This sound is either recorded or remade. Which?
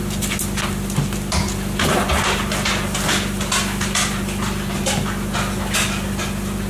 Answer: recorded